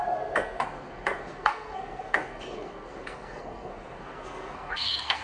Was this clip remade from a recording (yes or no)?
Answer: yes